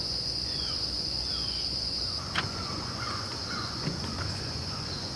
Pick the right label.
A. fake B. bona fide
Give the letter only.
A